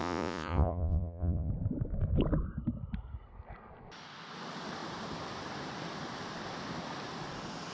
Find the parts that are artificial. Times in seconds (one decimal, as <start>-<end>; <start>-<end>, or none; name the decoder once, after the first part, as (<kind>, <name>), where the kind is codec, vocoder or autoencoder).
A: 0.0-1.5 (vocoder, Vocos)